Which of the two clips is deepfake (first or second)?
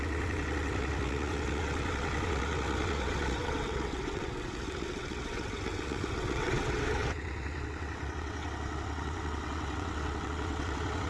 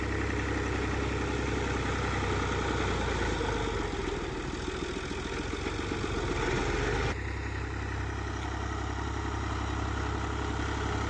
first